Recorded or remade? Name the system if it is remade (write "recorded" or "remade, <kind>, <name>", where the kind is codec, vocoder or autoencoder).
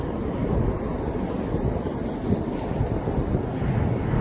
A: recorded